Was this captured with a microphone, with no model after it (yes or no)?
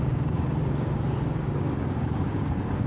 no